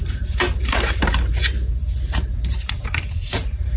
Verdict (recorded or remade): remade